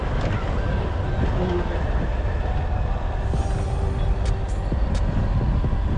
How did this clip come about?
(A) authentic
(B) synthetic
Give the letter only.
A